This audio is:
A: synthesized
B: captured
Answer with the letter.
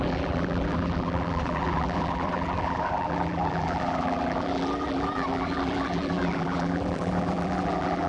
A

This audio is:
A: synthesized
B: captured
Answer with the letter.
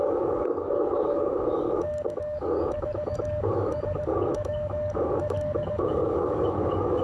A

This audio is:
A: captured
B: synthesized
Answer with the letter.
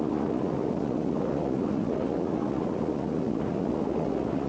B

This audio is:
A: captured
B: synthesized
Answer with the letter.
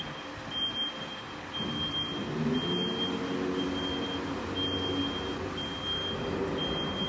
A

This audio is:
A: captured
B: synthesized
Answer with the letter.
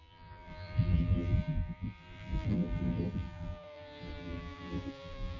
B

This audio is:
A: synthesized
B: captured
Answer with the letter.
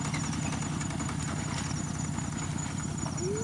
B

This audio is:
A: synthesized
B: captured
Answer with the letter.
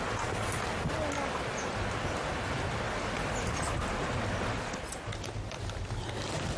B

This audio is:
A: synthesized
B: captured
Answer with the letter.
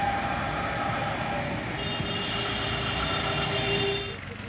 B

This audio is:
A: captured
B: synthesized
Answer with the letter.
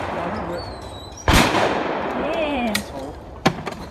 B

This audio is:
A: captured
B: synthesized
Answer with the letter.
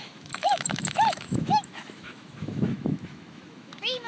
B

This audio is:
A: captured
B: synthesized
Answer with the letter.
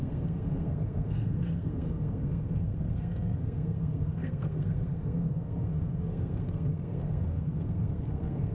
B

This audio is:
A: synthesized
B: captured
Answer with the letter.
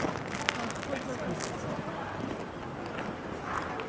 B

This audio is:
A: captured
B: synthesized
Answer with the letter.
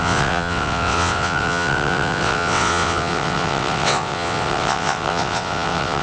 B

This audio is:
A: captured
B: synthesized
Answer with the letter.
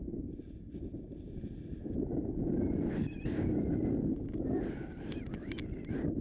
A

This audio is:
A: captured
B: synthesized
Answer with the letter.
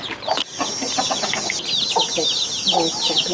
A